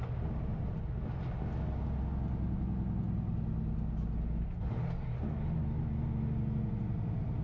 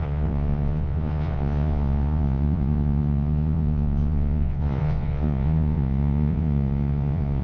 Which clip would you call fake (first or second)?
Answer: second